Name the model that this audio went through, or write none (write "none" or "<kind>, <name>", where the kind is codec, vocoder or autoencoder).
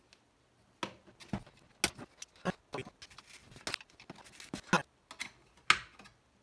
none